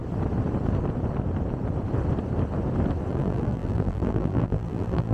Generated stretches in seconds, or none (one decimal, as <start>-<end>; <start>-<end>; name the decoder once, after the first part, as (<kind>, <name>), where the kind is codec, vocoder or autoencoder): 3.1-5.1 (vocoder, BigVGAN v2)